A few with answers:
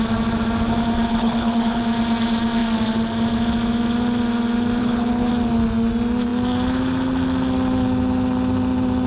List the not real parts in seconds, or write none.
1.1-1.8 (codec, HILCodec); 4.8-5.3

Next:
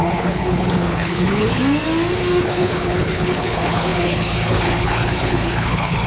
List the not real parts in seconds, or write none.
0.0-1.6 (codec, HILCodec); 2.4-6.1